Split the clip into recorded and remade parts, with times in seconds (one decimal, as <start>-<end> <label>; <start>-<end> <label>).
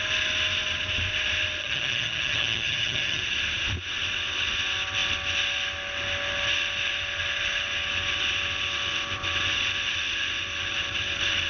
0.0-1.6 recorded; 1.6-3.2 remade; 3.2-11.5 recorded